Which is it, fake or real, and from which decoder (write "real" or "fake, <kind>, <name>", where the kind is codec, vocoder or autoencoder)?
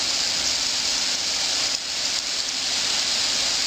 real